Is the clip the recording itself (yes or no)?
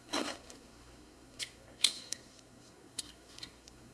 no